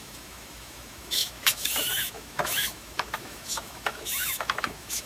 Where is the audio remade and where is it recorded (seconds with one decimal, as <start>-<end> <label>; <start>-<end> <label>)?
0.0-5.1 remade